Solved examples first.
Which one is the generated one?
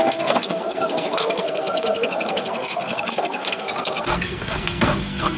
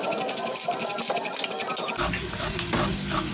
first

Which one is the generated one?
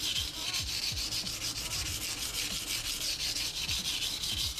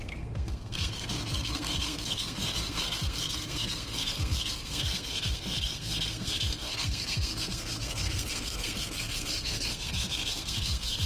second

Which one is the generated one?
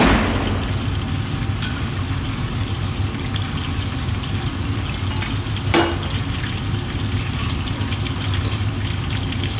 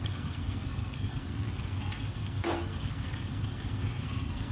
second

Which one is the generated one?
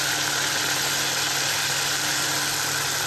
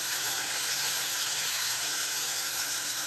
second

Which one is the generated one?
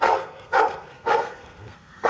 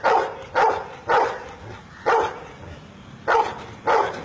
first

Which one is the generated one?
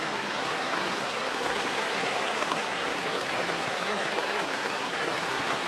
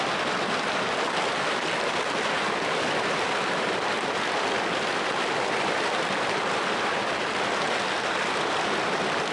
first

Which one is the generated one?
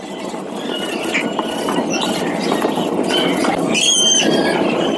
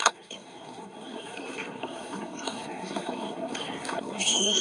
second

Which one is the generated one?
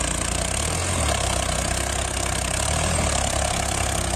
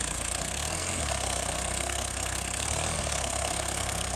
second